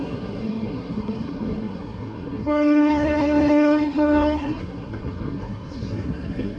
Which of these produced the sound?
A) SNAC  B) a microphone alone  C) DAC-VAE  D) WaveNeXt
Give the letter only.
A